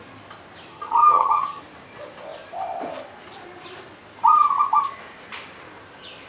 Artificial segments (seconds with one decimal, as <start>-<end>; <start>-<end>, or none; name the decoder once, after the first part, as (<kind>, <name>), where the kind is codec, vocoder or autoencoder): 0.7-1.6 (vocoder, HiFi-GAN)